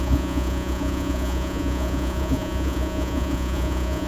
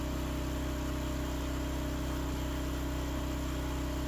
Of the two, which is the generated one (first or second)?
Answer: first